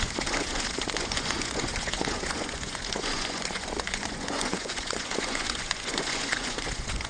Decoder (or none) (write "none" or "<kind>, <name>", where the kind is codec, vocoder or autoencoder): vocoder, Vocos